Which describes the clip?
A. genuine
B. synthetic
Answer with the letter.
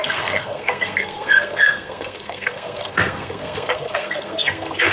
B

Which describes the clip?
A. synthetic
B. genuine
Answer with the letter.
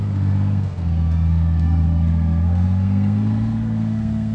A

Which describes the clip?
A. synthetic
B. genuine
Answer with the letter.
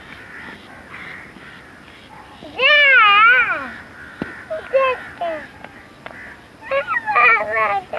B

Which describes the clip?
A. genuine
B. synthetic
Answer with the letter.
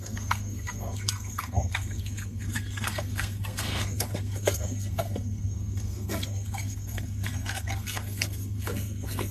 B